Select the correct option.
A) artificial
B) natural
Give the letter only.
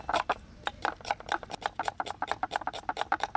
A